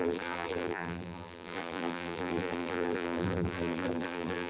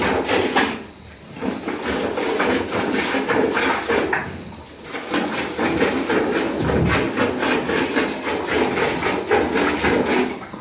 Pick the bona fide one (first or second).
second